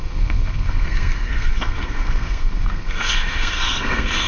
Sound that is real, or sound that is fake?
fake